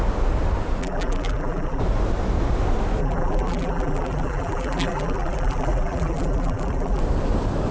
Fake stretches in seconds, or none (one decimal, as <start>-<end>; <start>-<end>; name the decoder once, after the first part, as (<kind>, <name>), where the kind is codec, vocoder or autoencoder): 0.8-1.8 (vocoder, BigVGAN v2); 3.0-7.0